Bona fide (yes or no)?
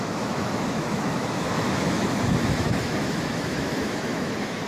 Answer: no